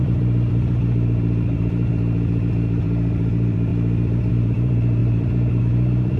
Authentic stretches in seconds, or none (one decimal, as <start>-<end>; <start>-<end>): 1.9-2.8; 3.7-4.3